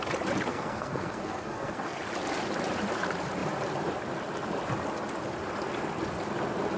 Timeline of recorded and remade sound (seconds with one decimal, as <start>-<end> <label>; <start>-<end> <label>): 0.0-0.5 recorded; 0.5-2.0 remade; 2.0-6.8 recorded